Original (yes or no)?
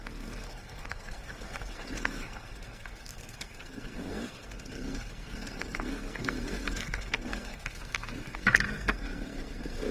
no